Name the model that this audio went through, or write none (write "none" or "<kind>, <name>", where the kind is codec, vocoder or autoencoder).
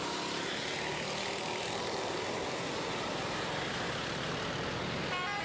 none